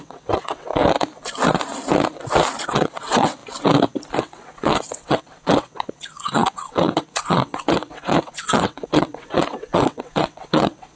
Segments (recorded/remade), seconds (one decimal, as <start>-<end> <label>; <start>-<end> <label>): 0.0-0.8 remade; 0.8-2.6 recorded; 2.6-3.4 remade; 3.4-4.2 recorded; 4.2-11.0 remade